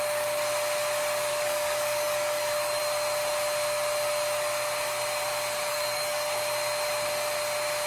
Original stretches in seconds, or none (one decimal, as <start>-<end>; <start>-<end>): 0.0-1.3; 2.8-5.7; 6.4-7.9